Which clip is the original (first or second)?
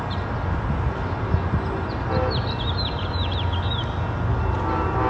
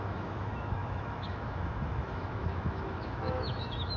first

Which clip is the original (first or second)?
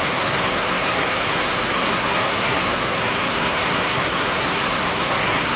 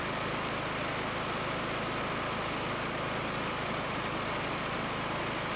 second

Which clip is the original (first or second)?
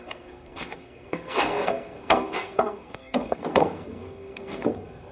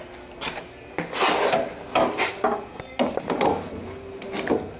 second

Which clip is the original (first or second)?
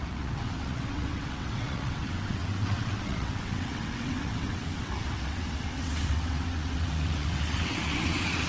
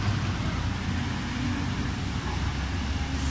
second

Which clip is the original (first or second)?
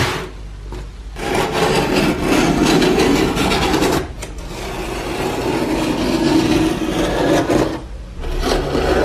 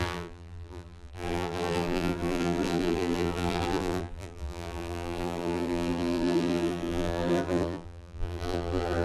first